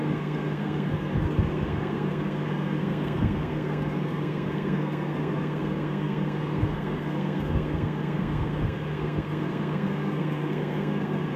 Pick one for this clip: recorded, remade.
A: remade